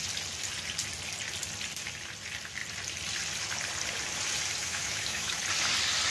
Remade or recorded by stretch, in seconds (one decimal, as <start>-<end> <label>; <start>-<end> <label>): 0.0-4.6 recorded; 4.6-5.4 remade; 5.4-6.1 recorded